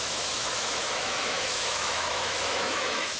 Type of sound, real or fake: fake